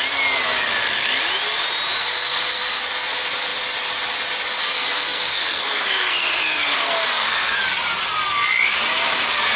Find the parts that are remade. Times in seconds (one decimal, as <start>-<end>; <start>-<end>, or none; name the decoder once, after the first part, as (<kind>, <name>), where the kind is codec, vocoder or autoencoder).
2.0-2.8 (codec, SNAC); 4.6-7.6